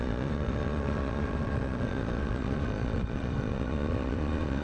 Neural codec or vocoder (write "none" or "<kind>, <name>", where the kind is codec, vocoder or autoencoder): vocoder, Vocos